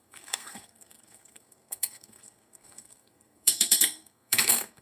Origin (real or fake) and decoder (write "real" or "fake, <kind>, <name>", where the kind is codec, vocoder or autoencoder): fake, codec, SNAC